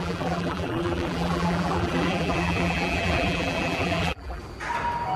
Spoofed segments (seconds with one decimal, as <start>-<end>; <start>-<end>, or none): 0.0-4.4